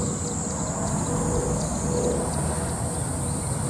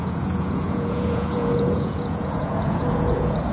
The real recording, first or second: first